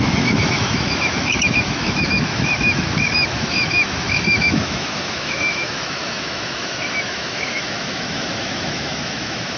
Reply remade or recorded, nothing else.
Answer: remade